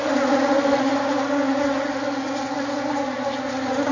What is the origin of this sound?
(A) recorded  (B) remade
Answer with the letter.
A